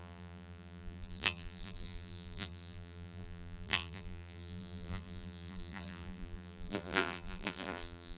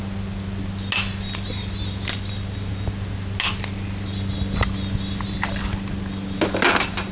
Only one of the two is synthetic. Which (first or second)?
first